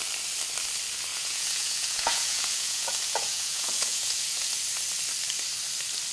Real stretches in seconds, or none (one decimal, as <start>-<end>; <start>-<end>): 0.0-1.1; 4.6-6.1